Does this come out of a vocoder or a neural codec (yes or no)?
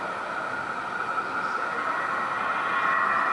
no